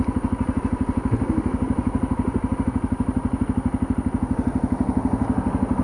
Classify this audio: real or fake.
real